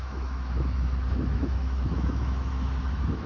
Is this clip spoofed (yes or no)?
yes